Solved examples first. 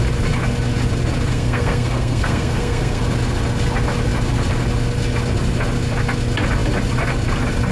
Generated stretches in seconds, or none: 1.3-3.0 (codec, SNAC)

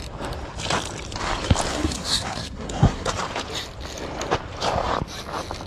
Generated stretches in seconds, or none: 1.7-3.1 (codec, SNAC)

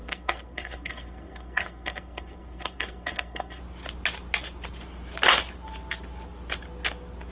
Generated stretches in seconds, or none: 0.0-3.6 (codec, SNAC)

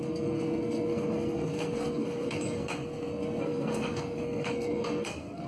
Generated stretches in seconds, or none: 0.0-5.5 (codec, SNAC)

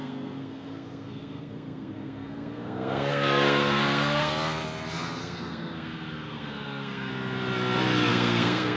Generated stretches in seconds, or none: 0.0-4.3 (codec, SNAC); 5.2-7.1; 8.1-8.8

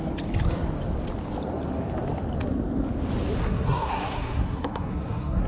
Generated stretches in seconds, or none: 3.4-5.5 (codec, SNAC)